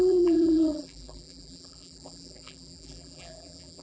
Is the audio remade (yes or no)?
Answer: yes